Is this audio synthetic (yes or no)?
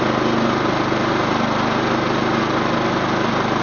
no